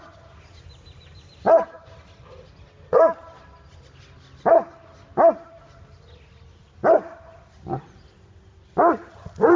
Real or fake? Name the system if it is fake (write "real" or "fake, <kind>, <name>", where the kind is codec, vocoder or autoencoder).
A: real